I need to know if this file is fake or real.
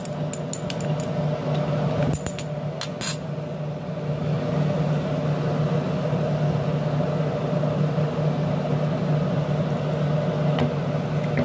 real